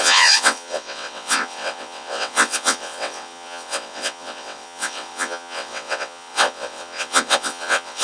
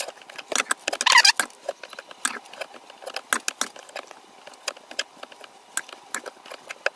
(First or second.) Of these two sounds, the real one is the second